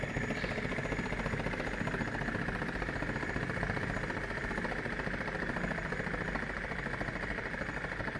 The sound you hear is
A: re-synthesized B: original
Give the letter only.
B